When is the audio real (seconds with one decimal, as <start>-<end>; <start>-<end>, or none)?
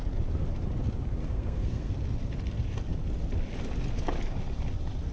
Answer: 0.0-1.2; 1.9-5.1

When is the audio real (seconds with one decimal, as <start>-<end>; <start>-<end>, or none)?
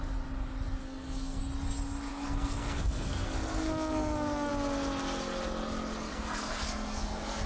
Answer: 0.0-0.8; 1.4-2.1; 4.5-6.1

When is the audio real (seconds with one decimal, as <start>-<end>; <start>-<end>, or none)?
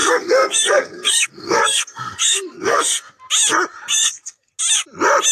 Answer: 3.2-3.9; 4.5-5.3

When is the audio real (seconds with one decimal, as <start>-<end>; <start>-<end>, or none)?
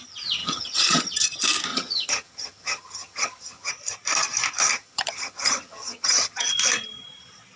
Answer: 0.0-0.4; 1.1-1.7; 3.7-4.7; 6.5-7.6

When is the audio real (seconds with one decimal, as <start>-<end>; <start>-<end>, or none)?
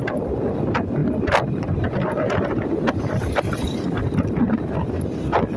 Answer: 0.0-1.0; 4.4-5.6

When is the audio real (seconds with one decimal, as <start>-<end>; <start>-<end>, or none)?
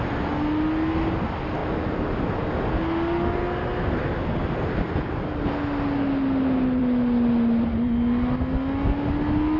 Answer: 0.0-9.6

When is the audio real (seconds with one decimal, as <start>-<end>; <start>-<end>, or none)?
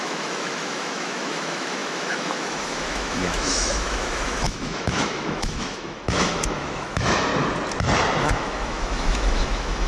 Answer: 7.3-8.2